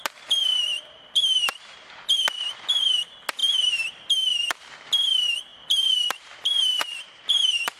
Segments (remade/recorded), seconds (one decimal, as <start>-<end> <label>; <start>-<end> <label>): 0.0-0.7 recorded; 0.7-2.8 remade; 2.8-3.4 recorded; 3.4-4.1 remade; 4.1-5.5 recorded; 5.5-7.8 remade